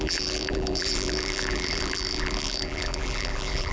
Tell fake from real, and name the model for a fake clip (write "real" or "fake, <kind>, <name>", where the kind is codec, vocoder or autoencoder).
fake, vocoder, BigVGAN v2